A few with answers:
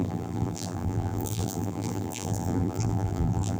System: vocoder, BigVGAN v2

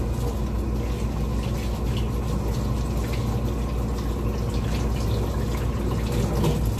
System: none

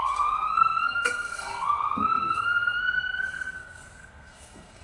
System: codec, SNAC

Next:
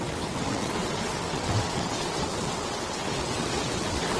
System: vocoder, WaveNeXt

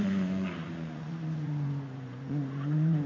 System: vocoder, Vocos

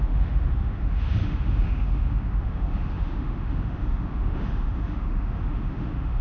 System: autoencoder, DAC-VAE